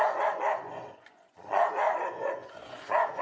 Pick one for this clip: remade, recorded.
remade